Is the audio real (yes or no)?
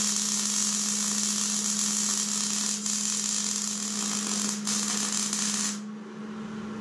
yes